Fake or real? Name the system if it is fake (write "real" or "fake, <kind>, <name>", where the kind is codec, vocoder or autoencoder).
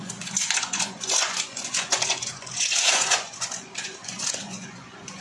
fake, vocoder, Vocos